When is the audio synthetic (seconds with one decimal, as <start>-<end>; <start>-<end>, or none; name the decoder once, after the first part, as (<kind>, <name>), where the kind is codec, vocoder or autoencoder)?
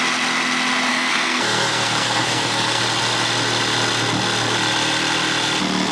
0.9-2.8 (codec, SNAC)